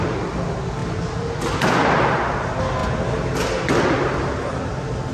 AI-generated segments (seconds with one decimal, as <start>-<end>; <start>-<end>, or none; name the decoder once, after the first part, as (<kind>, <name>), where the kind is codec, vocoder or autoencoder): none